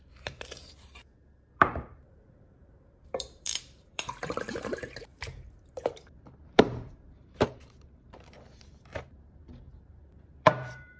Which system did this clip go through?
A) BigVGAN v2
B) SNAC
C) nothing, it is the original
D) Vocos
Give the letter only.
A